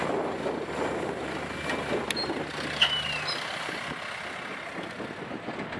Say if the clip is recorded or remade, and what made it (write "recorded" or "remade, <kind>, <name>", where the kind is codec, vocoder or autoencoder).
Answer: recorded